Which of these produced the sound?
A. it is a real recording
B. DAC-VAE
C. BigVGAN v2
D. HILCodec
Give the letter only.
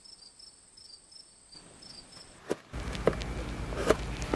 A